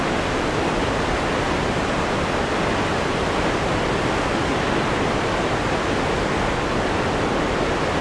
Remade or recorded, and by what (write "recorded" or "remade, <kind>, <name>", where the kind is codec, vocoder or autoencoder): recorded